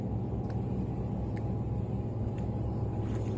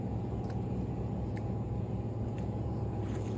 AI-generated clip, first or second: second